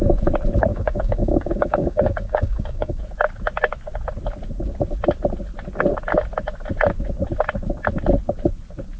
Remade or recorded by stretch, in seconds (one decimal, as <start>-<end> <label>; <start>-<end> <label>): 0.0-0.7 recorded; 0.7-3.0 remade; 3.0-9.0 recorded